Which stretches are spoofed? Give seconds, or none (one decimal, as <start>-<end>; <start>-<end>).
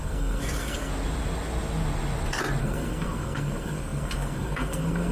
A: 0.0-0.9; 2.6-5.1